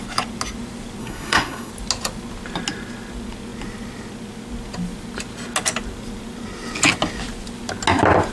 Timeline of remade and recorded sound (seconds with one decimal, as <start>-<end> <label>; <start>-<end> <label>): 0.0-1.0 recorded; 1.0-1.7 remade; 1.7-8.3 recorded